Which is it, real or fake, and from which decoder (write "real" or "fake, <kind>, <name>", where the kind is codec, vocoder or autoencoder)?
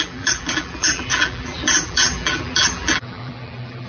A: fake, vocoder, BigVGAN v2